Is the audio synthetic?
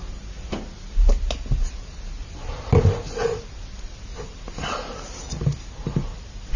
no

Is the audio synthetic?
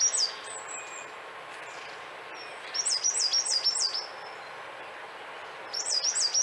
no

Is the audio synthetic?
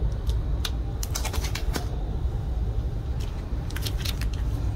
no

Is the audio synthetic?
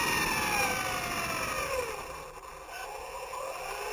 no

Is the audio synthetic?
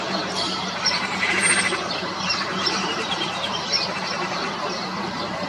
yes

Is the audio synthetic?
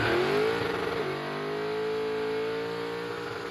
no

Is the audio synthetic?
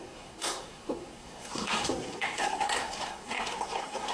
yes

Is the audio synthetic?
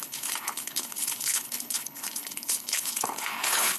yes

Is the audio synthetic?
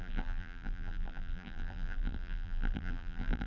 yes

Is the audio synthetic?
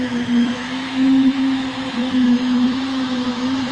yes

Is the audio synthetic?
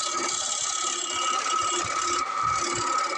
no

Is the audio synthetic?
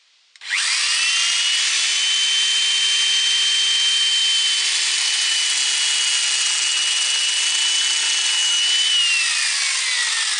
no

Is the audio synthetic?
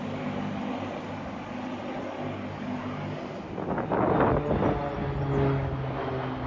no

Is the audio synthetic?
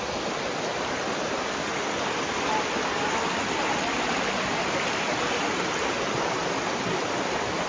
no